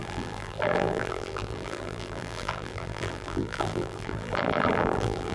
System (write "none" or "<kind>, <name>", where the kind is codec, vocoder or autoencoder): vocoder, BigVGAN v2